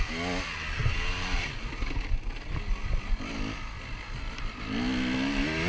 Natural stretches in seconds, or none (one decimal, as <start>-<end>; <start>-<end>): 0.0-5.7